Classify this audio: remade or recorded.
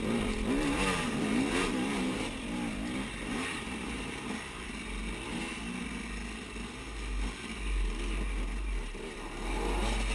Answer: recorded